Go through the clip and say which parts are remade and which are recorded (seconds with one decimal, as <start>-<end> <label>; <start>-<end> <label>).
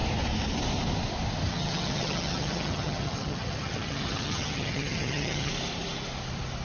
0.0-1.5 recorded; 1.5-5.5 remade; 5.5-6.6 recorded